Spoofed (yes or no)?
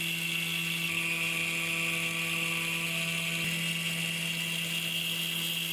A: no